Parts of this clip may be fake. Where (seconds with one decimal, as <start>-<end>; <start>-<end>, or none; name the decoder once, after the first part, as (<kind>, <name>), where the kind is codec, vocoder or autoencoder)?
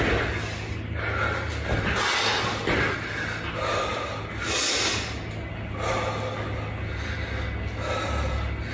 none